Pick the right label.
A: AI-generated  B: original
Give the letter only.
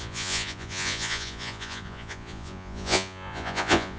A